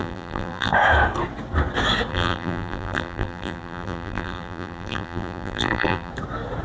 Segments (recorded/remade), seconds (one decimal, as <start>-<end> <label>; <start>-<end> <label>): 0.0-0.7 remade; 0.7-2.1 recorded; 2.1-6.1 remade; 6.1-6.6 recorded